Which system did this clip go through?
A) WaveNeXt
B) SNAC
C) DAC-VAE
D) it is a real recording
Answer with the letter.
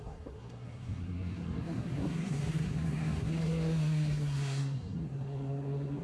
B